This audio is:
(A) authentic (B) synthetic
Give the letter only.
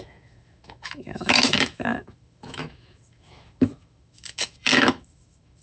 B